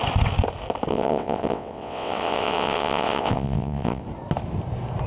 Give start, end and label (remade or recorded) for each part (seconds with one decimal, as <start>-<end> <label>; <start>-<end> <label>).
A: 0.0-0.9 recorded; 0.9-4.0 remade; 4.0-5.1 recorded